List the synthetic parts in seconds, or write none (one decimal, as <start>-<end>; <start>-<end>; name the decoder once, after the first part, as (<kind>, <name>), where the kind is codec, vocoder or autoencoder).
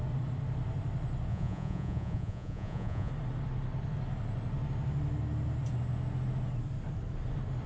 1.3-3.1 (vocoder, Vocos)